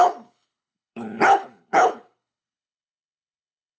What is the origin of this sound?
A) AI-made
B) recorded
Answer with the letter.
A